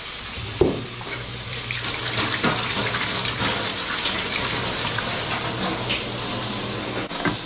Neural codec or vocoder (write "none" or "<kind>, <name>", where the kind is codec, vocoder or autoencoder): none